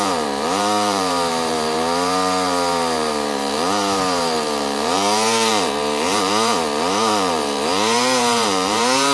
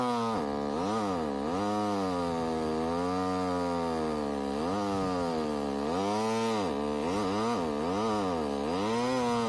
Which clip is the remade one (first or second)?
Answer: first